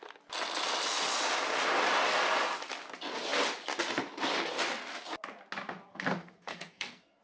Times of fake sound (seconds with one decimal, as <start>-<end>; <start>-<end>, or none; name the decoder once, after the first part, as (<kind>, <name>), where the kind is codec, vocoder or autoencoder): 5.9-7.2 (codec, SNAC)